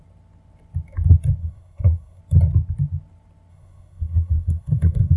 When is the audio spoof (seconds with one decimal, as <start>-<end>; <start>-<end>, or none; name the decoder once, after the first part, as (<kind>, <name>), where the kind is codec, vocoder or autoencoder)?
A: 1.4-2.2 (codec, SNAC); 3.5-5.2

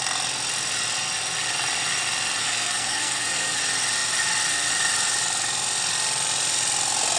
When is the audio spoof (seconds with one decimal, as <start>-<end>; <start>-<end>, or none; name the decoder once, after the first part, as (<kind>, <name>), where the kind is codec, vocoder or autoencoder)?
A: 2.4-3.6 (codec, SNAC)

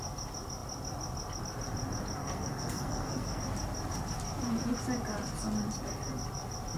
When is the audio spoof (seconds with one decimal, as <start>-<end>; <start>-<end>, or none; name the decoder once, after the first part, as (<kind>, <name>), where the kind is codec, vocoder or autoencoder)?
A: 2.2-3.4 (codec, SNAC)

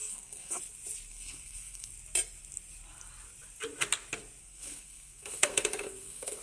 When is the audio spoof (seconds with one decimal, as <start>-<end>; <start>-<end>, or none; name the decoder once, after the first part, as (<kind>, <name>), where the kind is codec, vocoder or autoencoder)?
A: 0.0-0.6 (codec, SNAC); 1.1-1.9; 4.4-6.4

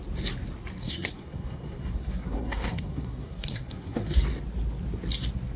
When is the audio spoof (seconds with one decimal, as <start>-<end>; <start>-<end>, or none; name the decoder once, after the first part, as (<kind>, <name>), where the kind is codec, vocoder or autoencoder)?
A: 0.8-4.2 (codec, SNAC)

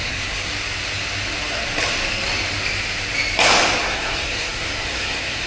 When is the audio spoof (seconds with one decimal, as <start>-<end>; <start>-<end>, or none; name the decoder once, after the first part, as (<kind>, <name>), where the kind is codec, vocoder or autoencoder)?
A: 0.0-0.5 (codec, SNAC); 3.8-5.5

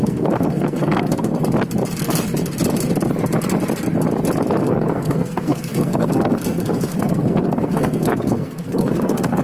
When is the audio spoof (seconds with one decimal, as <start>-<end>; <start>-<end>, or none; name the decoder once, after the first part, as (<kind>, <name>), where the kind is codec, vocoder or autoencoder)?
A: 0.0-1.3 (codec, SNAC); 4.6-9.4